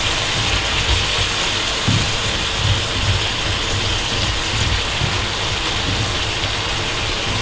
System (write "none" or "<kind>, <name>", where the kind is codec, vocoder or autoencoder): none